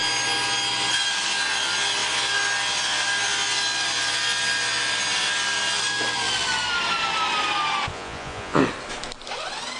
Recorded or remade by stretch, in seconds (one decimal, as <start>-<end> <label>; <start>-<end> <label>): 0.0-7.9 recorded; 7.9-8.6 remade; 8.6-9.8 recorded